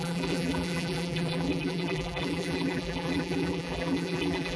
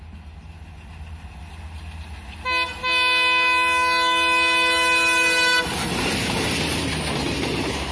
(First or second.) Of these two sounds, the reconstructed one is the first